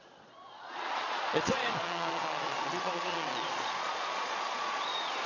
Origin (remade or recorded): remade